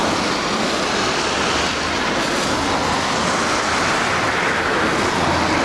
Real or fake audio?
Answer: real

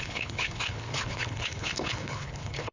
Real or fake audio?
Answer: fake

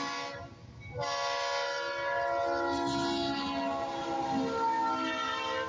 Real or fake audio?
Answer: real